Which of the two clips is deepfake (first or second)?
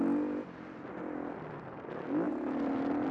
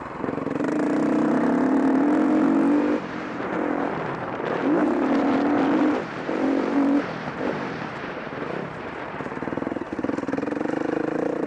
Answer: second